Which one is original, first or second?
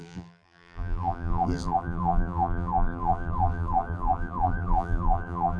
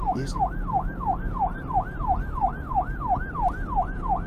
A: second